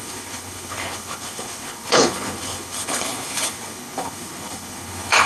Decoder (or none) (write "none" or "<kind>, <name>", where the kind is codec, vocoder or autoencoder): codec, HILCodec